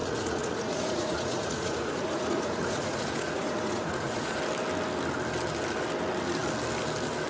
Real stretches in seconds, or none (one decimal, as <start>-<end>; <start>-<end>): 4.4-7.3